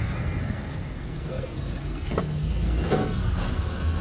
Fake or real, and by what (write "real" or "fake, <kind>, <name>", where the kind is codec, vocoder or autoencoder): fake, codec, SNAC